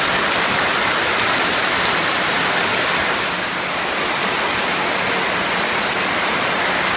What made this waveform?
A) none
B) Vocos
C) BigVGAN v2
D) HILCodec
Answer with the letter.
A